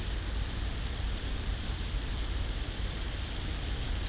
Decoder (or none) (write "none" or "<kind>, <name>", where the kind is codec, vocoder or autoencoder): vocoder, BigVGAN v2